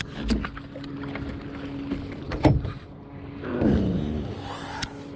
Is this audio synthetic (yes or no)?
no